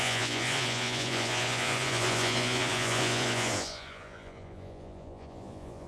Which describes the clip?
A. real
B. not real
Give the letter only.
B